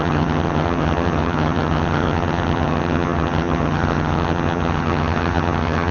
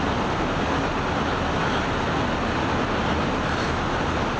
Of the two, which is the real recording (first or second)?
second